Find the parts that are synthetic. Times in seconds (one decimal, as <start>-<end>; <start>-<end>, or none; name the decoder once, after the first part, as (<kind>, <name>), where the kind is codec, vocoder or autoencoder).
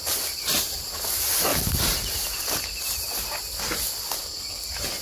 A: none